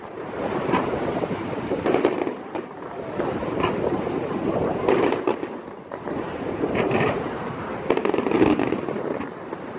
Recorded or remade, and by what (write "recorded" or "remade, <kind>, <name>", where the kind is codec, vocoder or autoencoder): remade, vocoder, BigVGAN v2